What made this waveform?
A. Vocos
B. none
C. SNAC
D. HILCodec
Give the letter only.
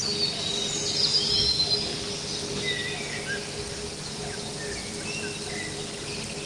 B